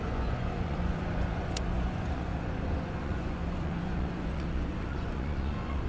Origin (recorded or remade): remade